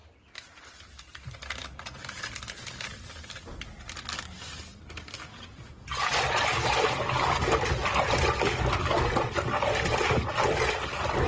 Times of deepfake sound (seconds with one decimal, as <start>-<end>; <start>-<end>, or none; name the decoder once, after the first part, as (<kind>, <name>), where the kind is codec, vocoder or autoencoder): none